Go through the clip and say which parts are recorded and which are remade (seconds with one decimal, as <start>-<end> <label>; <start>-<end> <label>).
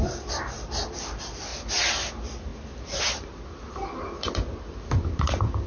0.0-5.7 remade